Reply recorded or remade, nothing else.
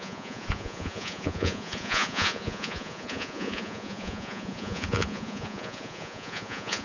remade